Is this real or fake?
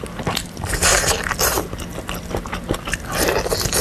real